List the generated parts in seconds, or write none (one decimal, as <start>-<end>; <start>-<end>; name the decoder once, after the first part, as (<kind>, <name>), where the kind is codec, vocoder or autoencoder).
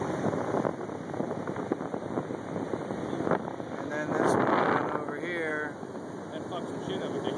none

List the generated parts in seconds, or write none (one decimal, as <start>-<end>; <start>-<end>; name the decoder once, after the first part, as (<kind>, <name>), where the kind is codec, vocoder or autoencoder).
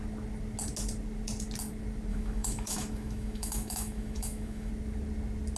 2.1-4.7 (autoencoder, DAC-VAE)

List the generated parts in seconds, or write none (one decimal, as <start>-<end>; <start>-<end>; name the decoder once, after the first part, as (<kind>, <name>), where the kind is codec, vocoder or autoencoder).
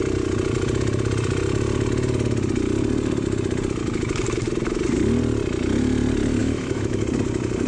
6.4-7.0 (autoencoder, DAC-VAE)